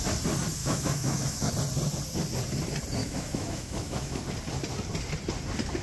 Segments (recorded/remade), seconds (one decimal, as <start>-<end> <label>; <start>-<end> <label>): 0.0-0.6 recorded; 0.6-1.5 remade; 1.5-3.0 recorded; 3.0-4.2 remade; 4.2-5.8 recorded